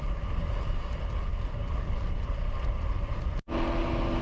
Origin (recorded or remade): recorded